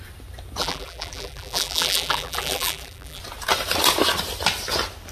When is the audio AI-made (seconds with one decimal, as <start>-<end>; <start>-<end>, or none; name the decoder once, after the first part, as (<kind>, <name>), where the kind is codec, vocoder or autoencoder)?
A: 0.6-3.2 (vocoder, BigVGAN v2)